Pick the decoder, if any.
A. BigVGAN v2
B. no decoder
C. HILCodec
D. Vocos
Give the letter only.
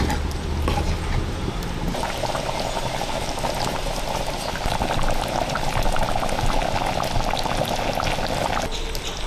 B